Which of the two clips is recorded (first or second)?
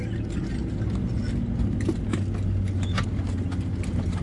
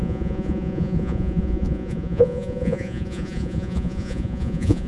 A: first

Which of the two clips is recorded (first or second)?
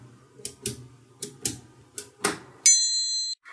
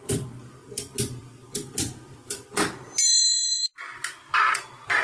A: first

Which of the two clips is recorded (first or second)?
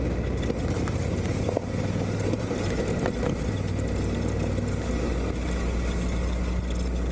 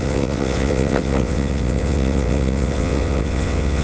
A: first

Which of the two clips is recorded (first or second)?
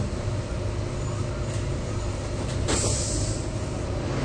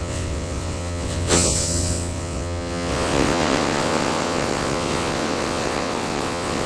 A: first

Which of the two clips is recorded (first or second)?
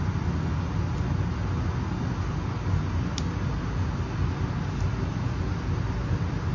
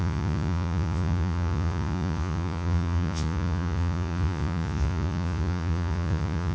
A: first